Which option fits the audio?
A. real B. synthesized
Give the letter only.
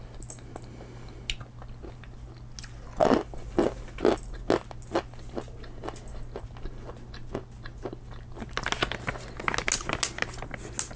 A